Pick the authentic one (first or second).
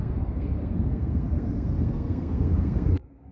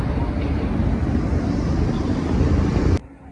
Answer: second